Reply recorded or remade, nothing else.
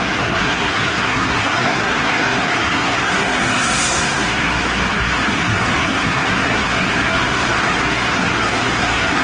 remade